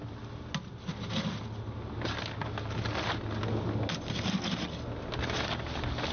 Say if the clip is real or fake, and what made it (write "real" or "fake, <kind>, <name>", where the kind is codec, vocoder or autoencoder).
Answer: real